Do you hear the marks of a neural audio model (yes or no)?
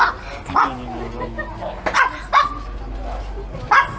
no